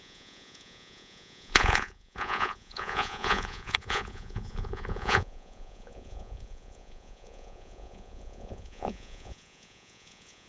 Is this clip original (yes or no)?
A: no